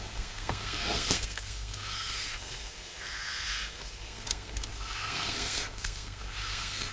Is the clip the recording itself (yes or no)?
no